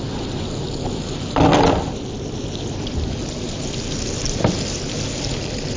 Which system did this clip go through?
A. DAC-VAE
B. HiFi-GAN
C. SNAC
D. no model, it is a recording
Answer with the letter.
D